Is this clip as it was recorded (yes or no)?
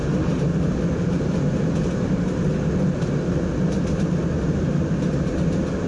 yes